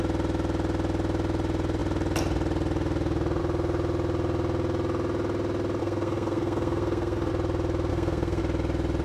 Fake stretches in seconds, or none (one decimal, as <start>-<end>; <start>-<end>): 5.8-7.3; 7.9-8.4